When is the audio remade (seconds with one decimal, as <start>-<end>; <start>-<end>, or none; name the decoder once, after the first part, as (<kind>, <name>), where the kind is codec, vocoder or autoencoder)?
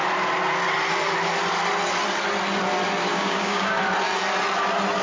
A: 3.1-3.8 (codec, DAC)